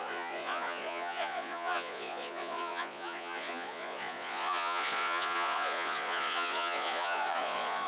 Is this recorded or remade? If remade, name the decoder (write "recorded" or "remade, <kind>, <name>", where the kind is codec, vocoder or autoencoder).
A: remade, vocoder, Vocos